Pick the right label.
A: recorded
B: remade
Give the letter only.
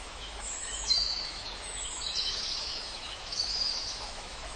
B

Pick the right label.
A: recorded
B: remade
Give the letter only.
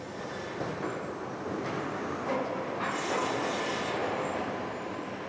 A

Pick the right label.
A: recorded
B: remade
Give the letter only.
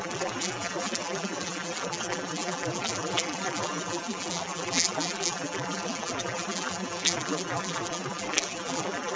B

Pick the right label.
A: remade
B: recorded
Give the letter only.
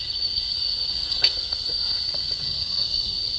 A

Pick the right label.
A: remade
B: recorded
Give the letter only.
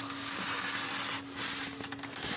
B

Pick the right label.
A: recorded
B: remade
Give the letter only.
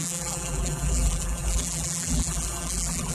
B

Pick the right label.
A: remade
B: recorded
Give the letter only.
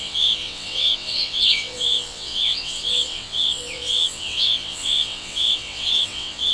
A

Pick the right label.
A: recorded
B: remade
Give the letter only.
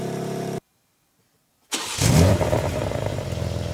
B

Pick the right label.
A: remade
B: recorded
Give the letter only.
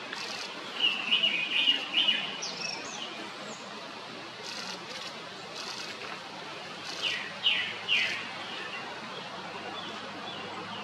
B